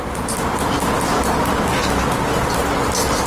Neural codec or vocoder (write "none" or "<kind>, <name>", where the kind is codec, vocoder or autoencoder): none